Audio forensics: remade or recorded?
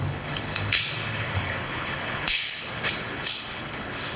remade